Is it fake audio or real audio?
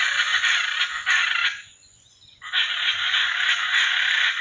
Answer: fake